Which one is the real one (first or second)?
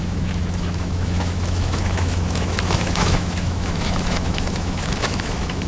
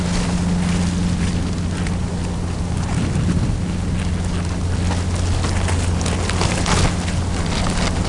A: second